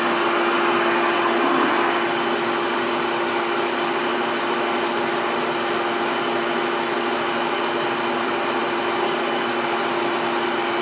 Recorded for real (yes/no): yes